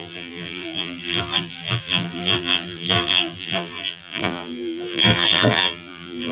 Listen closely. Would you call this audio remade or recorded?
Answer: remade